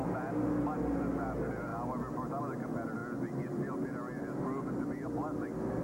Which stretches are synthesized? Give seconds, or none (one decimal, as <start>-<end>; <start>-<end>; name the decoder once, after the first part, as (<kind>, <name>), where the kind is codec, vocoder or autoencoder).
none